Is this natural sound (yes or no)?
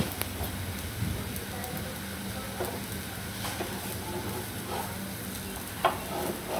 yes